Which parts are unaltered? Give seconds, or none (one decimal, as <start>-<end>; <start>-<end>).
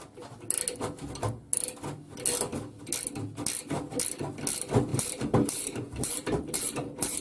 0.0-4.9